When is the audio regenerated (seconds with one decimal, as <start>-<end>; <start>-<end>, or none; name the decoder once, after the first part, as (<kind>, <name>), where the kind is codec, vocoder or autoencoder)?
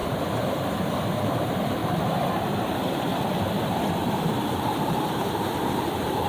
0.0-3.1 (vocoder, BigVGAN v2); 4.3-6.3